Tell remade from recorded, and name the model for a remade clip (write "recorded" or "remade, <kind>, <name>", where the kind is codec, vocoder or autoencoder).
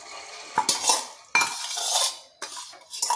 recorded